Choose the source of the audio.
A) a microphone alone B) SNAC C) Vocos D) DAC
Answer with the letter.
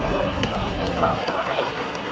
B